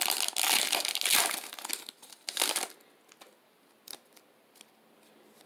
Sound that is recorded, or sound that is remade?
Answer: recorded